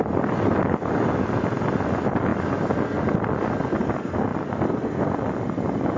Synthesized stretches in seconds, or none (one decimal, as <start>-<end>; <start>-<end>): none